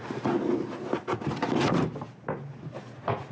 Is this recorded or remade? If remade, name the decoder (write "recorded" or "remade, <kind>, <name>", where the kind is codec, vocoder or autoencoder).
recorded